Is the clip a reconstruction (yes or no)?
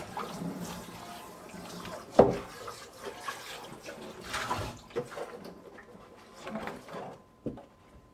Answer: no